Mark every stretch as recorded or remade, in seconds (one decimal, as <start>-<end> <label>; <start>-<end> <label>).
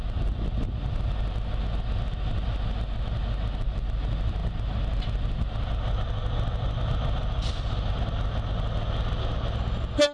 0.0-10.1 recorded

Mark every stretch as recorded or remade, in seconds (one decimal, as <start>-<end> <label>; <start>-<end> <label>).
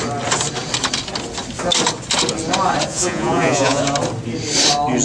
0.0-2.9 recorded; 2.9-3.8 remade; 3.8-5.0 recorded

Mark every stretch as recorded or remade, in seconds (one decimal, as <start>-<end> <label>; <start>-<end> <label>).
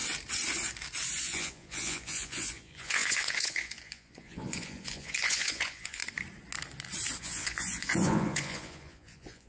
0.0-1.2 recorded; 1.2-6.0 remade; 6.0-7.2 recorded; 7.2-9.5 remade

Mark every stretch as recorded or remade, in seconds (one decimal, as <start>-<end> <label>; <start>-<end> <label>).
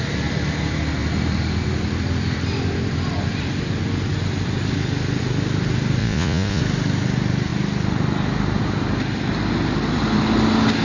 0.0-6.0 recorded; 6.0-6.6 remade; 6.6-10.8 recorded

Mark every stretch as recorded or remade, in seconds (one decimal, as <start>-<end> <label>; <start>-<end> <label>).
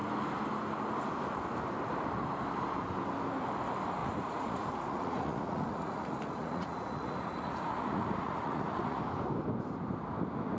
0.0-4.0 recorded; 4.0-9.0 remade; 9.0-10.6 recorded